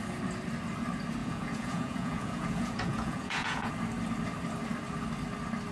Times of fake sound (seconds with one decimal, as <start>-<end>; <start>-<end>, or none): 1.2-3.7